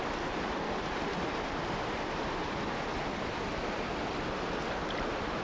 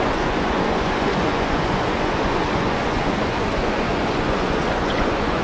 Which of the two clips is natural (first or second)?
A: first